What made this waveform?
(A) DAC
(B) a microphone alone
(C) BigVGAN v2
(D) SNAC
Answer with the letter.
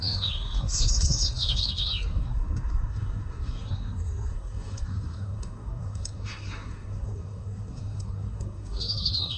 D